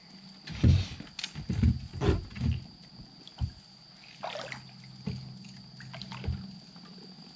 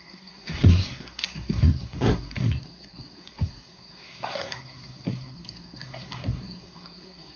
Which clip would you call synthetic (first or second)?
second